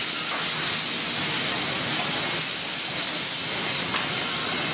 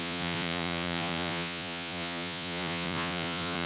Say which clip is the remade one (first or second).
second